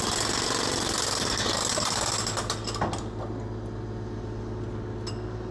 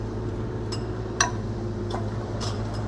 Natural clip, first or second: first